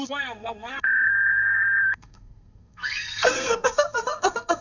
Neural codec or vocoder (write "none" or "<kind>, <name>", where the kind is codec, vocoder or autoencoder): codec, SNAC